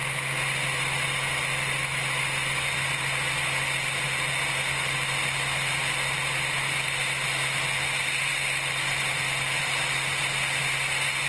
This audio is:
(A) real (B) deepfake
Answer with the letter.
A